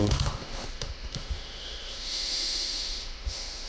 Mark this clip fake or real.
fake